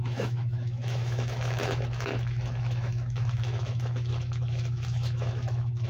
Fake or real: fake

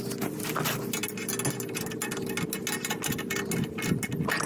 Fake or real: real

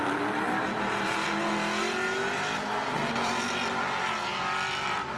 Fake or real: real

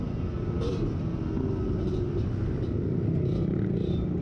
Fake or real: real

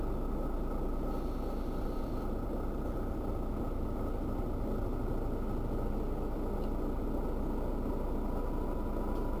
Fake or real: real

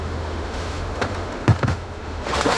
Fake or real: fake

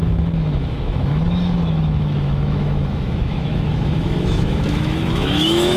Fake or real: fake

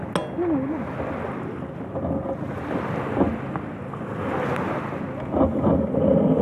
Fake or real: real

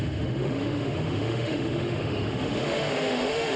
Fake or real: fake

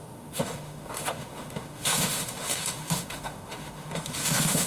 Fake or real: fake